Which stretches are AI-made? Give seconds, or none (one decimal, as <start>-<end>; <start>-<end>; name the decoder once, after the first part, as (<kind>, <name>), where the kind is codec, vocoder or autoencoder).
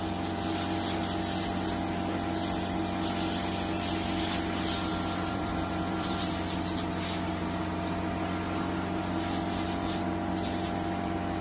4.9-6.3 (vocoder, BigVGAN v2)